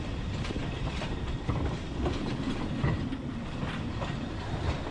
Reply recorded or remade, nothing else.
remade